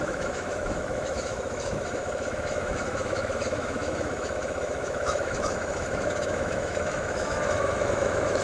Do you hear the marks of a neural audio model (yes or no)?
yes